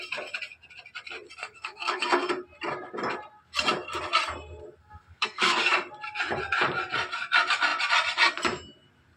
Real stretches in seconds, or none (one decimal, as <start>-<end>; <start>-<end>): 0.0-1.4; 2.3-4.8; 5.6-9.2